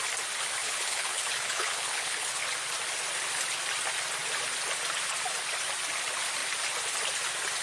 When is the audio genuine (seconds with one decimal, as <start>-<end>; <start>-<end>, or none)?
0.0-0.6; 2.4-7.6